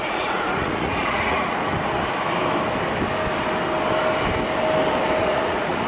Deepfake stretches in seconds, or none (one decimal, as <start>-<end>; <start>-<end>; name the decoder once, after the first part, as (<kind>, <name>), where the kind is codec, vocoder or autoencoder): 0.0-1.7 (vocoder, Vocos); 5.2-5.9